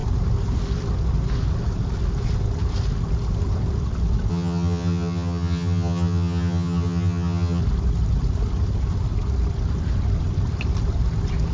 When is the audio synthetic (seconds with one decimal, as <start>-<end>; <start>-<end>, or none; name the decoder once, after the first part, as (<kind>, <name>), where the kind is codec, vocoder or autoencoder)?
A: 4.3-7.6 (vocoder, HiFi-GAN)